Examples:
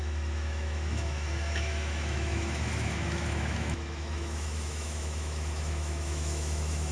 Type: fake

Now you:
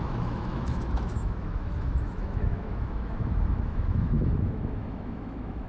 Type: fake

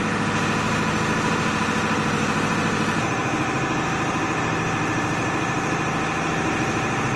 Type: real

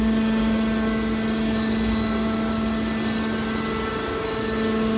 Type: real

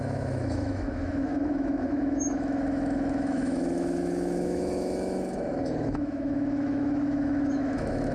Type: fake